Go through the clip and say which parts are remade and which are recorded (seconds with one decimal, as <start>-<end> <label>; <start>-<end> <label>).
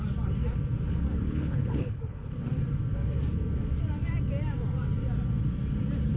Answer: 0.0-1.1 recorded; 1.1-2.4 remade; 2.4-6.2 recorded